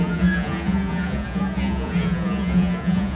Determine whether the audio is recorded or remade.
remade